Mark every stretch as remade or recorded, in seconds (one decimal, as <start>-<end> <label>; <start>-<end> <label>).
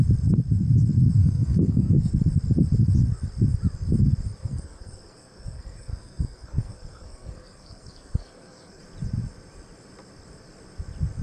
0.0-1.2 recorded; 1.2-2.1 remade; 2.1-4.4 recorded; 4.4-8.8 remade; 8.8-11.2 recorded